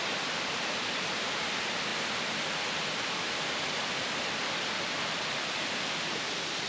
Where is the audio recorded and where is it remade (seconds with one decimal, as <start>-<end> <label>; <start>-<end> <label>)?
0.0-6.7 remade